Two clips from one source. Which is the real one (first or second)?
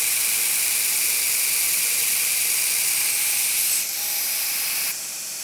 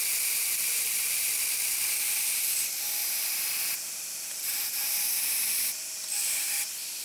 first